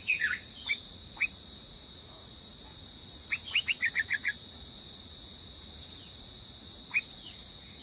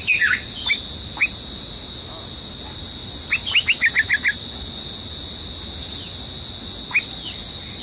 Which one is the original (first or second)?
second